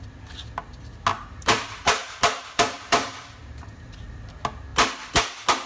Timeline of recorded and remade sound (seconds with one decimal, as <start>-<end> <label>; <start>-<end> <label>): 0.0-1.1 recorded; 1.1-4.3 remade; 4.3-5.7 recorded